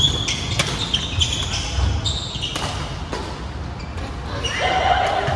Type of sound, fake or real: real